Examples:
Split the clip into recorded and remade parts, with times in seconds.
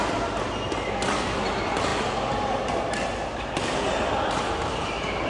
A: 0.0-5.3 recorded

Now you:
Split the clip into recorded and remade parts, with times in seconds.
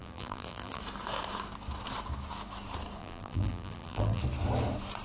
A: 0.0-0.8 remade; 0.8-3.0 recorded; 3.0-4.2 remade; 4.2-5.0 recorded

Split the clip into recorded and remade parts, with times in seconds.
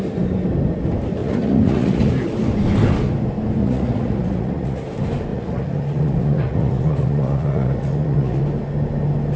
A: 0.0-1.2 recorded; 1.2-2.1 remade; 2.1-3.6 recorded; 3.6-4.8 remade; 4.8-5.3 recorded; 5.3-8.4 remade; 8.4-9.4 recorded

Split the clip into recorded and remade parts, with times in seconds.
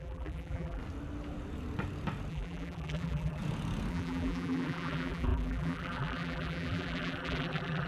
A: 0.0-0.8 remade; 0.8-2.3 recorded; 2.3-3.4 remade; 3.4-3.9 recorded; 3.9-7.9 remade